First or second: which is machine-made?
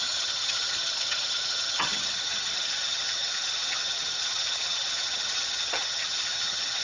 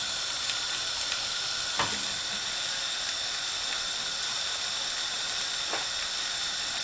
first